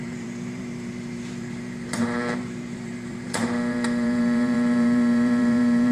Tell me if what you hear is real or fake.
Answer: fake